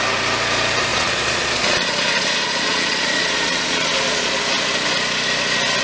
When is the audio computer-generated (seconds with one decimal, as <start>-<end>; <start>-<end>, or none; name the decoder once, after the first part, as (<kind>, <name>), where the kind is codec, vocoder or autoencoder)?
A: 0.9-4.4 (vocoder, Vocos)